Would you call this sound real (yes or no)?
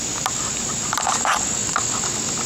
yes